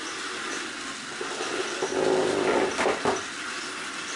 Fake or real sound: real